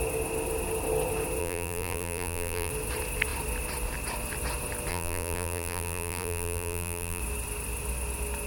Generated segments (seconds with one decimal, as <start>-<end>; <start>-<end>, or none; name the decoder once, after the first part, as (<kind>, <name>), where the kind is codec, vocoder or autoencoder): 1.4-2.7 (vocoder, BigVGAN v2); 4.9-7.2